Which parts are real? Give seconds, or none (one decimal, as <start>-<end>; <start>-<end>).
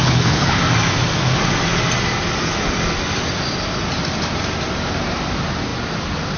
0.6-6.4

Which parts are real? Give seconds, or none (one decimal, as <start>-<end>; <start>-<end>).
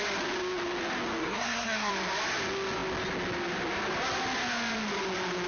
0.0-1.2; 1.9-5.5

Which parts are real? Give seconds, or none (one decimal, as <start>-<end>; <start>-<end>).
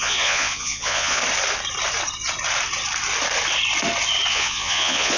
1.2-4.3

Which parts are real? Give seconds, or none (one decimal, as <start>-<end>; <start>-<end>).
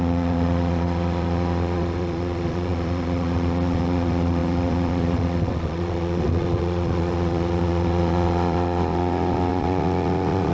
none